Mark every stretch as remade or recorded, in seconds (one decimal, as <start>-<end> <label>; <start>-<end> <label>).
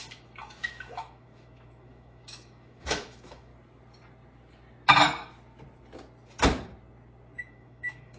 0.0-3.5 remade; 3.5-7.4 recorded; 7.4-8.2 remade